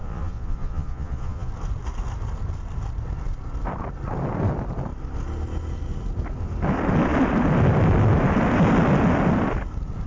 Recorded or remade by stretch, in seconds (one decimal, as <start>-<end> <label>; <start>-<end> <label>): 0.0-1.5 remade; 1.5-10.1 recorded